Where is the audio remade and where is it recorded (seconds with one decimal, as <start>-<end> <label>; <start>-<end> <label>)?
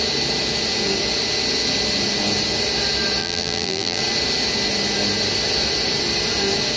0.0-3.2 recorded; 3.2-4.0 remade; 4.0-6.8 recorded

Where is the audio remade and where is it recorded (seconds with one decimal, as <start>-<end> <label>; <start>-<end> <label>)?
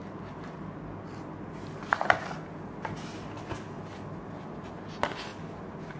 0.0-6.0 recorded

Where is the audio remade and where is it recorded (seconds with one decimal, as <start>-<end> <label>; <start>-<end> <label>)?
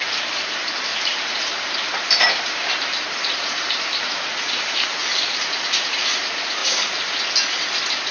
0.0-6.6 remade; 6.6-8.1 recorded